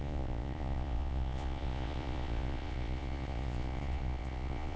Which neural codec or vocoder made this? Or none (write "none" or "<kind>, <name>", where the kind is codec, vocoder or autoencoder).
vocoder, Vocos